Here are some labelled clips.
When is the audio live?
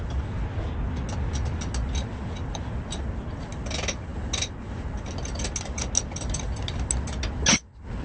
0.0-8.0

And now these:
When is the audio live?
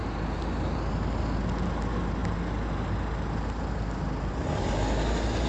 0.0-5.5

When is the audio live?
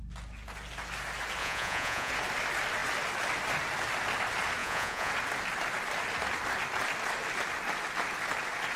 0.0-1.4; 2.1-4.6; 5.1-8.8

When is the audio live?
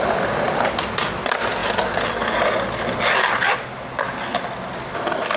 0.0-5.4